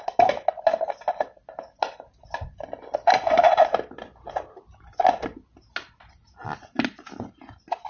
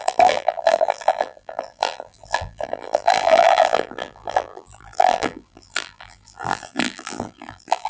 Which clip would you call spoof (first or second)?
second